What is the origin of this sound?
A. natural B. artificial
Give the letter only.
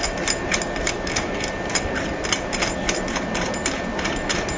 A